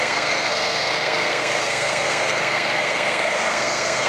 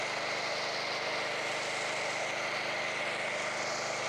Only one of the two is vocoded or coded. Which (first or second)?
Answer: first